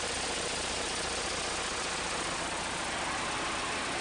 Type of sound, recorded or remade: recorded